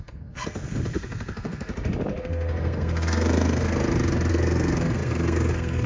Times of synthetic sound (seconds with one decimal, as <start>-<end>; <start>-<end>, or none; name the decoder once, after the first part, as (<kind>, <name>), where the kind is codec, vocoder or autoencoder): 0.0-1.7 (codec, SNAC); 2.2-3.8; 4.3-5.9